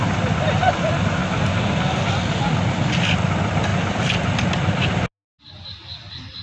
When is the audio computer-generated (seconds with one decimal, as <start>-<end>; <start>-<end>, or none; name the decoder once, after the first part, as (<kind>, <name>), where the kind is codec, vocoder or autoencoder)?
none